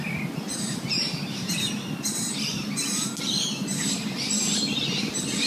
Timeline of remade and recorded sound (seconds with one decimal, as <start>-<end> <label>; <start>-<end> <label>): 0.0-0.5 recorded; 0.5-1.7 remade; 1.7-2.5 recorded; 2.5-4.8 remade; 4.8-5.5 recorded